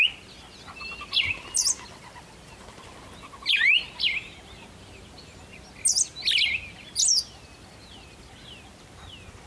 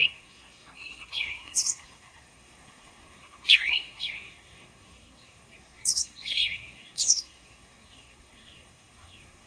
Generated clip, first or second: second